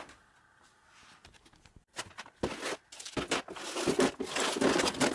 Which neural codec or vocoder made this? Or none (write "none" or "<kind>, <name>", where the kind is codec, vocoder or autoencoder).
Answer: none